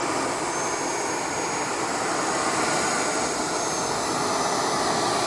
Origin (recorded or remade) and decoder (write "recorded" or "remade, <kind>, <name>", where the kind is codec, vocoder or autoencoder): recorded